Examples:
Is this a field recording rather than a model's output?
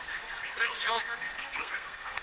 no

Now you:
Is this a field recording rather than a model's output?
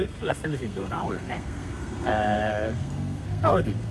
no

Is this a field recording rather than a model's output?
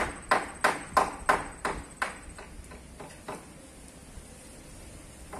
yes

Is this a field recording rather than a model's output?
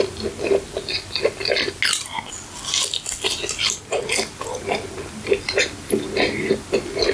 yes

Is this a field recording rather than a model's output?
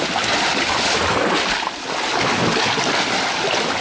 yes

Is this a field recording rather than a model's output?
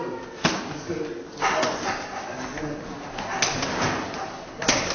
yes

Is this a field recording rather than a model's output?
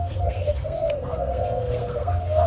no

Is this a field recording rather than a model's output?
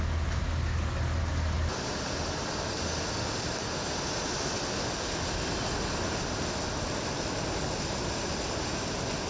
yes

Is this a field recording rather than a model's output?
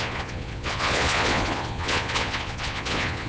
no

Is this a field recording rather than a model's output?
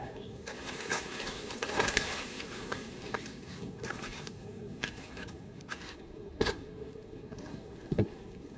no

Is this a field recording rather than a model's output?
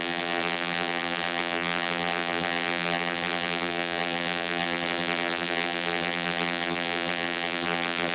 no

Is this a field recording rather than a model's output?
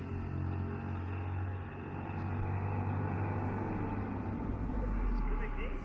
yes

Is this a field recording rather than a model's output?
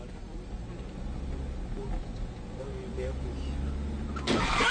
yes